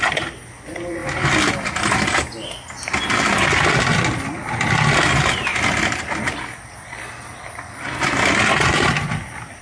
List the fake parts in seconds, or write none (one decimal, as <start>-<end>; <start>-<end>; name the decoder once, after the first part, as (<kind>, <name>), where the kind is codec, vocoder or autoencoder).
none